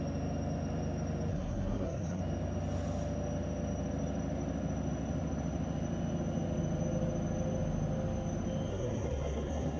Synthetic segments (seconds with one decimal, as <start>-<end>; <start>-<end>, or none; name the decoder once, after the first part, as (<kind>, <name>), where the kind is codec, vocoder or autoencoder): 1.3-2.2 (codec, SNAC); 8.7-9.8